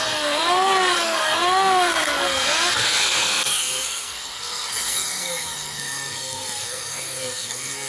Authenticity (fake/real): fake